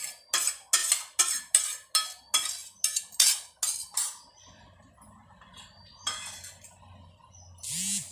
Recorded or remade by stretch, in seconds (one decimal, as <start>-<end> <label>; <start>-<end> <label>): 0.0-8.1 recorded